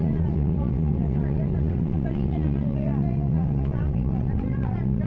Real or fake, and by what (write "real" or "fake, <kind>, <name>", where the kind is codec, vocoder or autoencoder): fake, vocoder, WaveNeXt